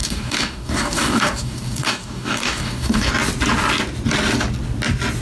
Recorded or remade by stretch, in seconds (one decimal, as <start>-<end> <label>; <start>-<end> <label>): 0.0-3.1 remade; 3.1-5.2 recorded

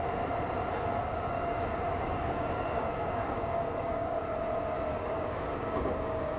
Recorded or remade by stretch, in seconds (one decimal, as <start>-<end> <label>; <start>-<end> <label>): 0.0-1.0 recorded; 1.0-4.2 remade; 4.2-4.9 recorded; 4.9-6.4 remade